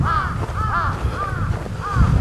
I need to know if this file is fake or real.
fake